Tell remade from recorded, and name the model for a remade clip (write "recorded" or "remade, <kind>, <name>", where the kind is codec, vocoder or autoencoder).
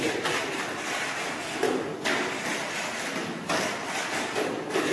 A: recorded